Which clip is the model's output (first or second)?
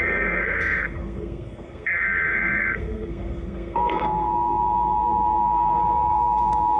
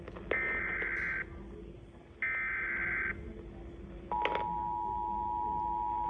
first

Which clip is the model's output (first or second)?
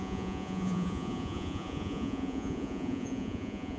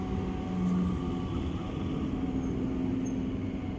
first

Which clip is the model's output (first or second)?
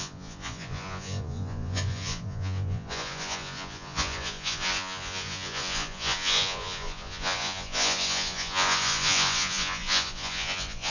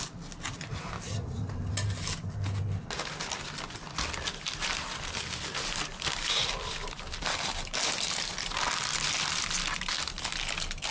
first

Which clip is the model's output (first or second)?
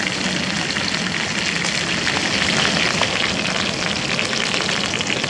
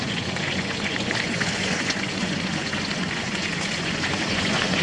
second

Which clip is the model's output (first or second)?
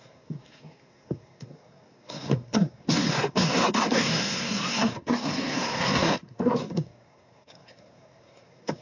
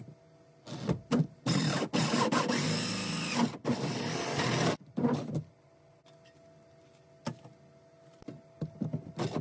first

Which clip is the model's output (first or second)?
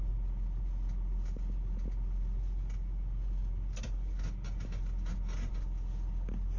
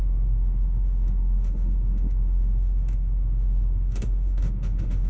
second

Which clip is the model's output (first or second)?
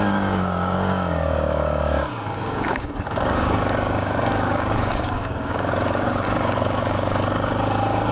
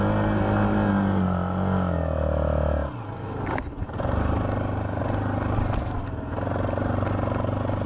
first